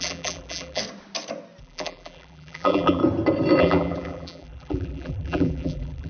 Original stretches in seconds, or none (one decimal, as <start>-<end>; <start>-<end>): 0.8-1.6; 3.0-3.6